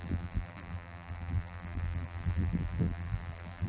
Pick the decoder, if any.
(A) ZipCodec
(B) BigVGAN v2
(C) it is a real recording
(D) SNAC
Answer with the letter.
B